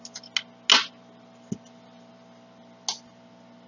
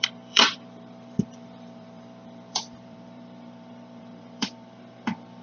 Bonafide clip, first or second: first